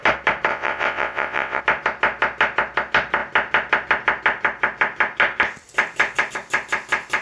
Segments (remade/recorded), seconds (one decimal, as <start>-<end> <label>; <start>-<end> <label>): 0.0-0.5 recorded; 0.5-1.6 remade; 1.6-7.2 recorded